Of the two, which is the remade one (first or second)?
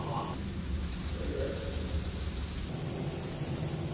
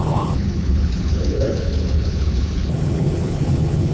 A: second